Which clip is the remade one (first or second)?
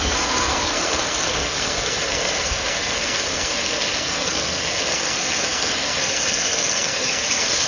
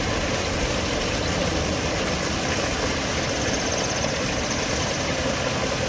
first